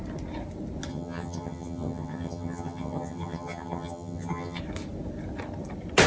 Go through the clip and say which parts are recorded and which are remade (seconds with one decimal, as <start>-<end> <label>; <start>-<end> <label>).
0.0-0.9 recorded; 0.9-4.6 remade; 4.6-6.1 recorded